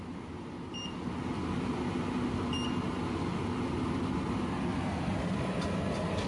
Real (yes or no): yes